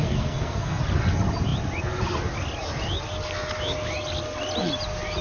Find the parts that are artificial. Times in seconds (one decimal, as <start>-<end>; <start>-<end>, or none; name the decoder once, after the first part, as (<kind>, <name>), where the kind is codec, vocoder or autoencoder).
0.0-0.8 (codec, SNAC)